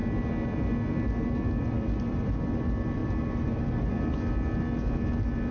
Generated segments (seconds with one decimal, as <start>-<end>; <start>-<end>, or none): none

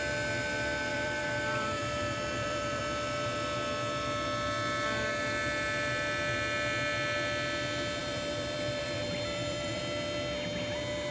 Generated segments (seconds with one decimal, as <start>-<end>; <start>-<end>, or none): 0.9-2.8; 8.0-9.8

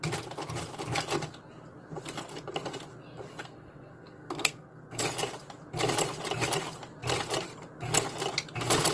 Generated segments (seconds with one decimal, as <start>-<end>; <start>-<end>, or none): 3.4-5.0